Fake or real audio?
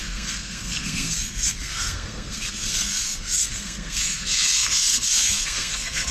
fake